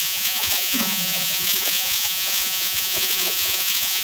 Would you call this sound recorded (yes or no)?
no